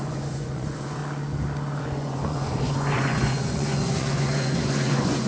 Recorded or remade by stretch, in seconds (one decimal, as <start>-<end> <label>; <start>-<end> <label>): 0.0-1.0 remade; 1.0-1.8 recorded; 1.8-5.3 remade

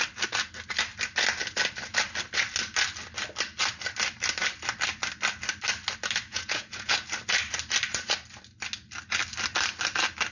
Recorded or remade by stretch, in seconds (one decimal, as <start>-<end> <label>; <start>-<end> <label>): 0.0-6.3 recorded; 6.3-6.9 remade; 6.9-10.3 recorded

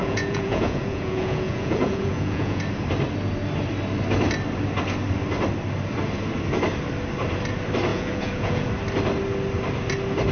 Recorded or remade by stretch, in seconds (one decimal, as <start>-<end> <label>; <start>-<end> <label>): 0.0-2.6 remade; 2.6-7.9 recorded; 7.9-8.7 remade; 8.7-10.3 recorded

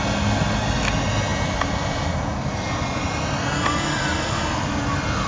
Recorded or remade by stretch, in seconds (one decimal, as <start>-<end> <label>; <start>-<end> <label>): 0.0-5.3 recorded

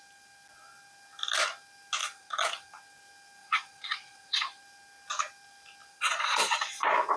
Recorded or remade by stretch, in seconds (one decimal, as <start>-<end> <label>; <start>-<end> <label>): 0.0-2.0 recorded; 2.0-2.7 remade; 2.7-3.4 recorded; 3.4-4.6 remade; 4.6-5.9 recorded; 5.9-6.7 remade; 6.7-7.2 recorded

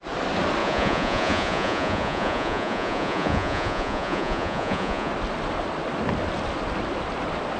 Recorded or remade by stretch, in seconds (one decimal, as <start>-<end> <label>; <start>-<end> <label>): 0.0-0.6 recorded; 0.6-5.1 remade; 5.1-7.6 recorded

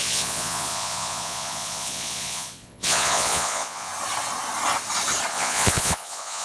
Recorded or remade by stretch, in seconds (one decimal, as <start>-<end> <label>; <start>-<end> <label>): 0.0-3.9 remade; 3.9-5.3 recorded; 5.3-6.4 remade